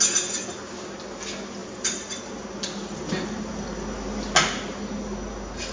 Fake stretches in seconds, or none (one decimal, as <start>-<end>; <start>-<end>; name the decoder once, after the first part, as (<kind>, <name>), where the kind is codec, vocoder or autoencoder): 1.6-2.2 (vocoder, BigVGAN v2); 2.8-3.6